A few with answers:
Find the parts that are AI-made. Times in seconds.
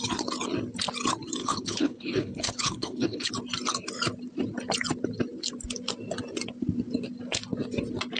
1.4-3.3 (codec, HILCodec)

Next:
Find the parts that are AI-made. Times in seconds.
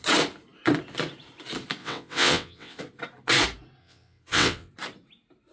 1.8-2.8 (vocoder, WaveNeXt); 3.8-4.7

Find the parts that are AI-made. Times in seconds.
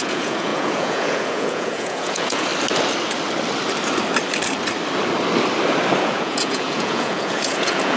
0.0-2.5 (vocoder, Vocos); 6.0-8.0